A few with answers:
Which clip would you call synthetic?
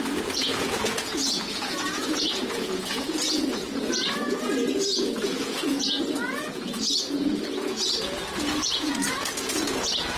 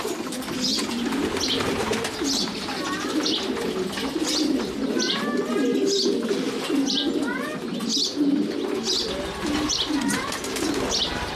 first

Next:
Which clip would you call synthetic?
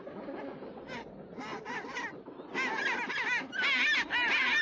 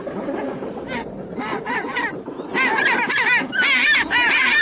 second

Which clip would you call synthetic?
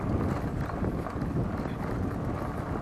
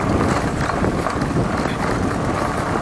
second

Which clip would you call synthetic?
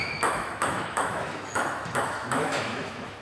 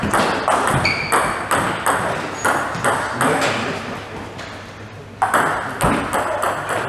first